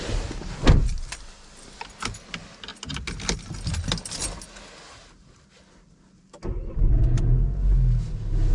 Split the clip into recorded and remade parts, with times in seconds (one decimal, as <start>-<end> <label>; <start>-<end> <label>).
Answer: 0.0-8.5 recorded